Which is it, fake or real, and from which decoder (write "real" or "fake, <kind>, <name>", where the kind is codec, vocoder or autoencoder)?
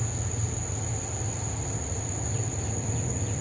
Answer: real